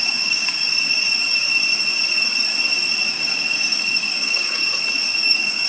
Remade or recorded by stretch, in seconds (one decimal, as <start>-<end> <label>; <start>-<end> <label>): 0.0-0.6 remade; 0.6-3.1 recorded; 3.1-4.6 remade; 4.6-5.2 recorded; 5.2-5.7 remade